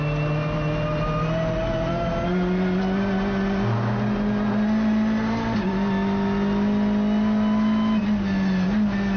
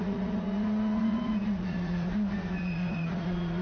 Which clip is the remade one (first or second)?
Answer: second